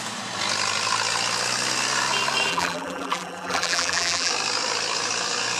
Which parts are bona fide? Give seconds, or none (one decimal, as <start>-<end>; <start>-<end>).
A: 0.0-2.5; 4.3-5.6